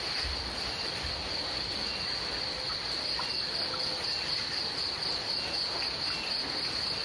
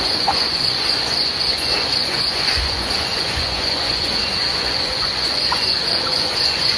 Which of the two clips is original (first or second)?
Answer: first